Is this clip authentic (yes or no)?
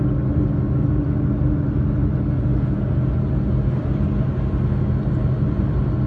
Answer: yes